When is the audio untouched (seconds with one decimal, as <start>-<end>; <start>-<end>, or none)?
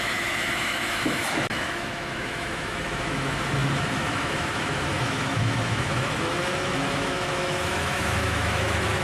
none